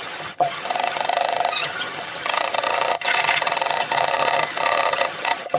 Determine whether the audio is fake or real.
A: fake